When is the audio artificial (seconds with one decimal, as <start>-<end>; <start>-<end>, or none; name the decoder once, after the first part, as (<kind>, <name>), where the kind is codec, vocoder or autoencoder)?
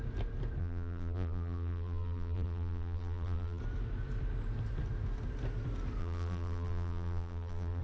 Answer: 0.6-3.6 (vocoder, BigVGAN v2); 6.0-7.8